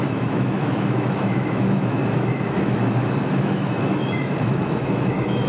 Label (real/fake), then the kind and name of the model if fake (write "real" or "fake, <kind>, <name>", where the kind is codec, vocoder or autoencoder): fake, autoencoder, DAC-VAE